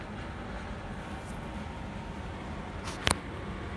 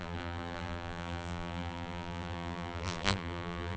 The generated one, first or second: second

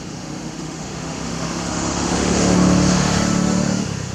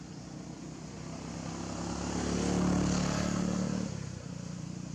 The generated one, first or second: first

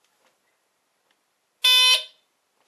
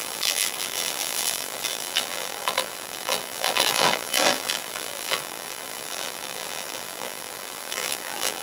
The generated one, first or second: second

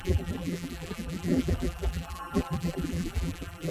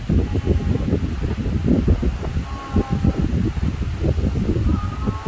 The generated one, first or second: first